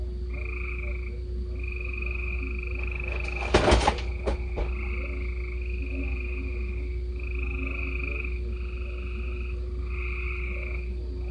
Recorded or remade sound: recorded